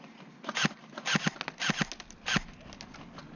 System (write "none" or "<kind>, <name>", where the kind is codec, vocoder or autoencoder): none